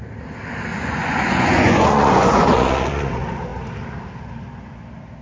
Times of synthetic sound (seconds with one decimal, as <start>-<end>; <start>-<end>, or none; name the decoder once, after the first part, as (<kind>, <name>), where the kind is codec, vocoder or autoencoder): 0.7-3.1 (vocoder, Vocos)